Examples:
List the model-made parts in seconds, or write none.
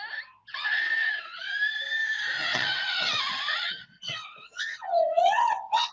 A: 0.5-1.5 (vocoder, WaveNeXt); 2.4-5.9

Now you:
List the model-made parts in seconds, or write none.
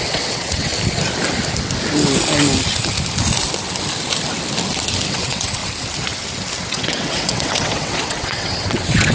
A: 0.0-0.7 (vocoder, WaveNeXt); 5.1-5.6; 6.7-9.1